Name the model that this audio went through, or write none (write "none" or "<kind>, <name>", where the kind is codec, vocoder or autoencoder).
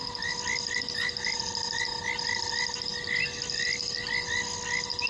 none